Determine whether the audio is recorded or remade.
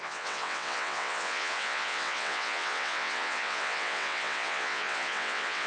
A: remade